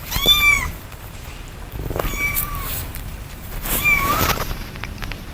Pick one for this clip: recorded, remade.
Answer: remade